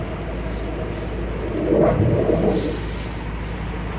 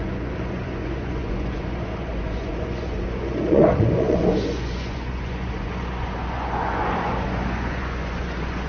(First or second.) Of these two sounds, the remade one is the second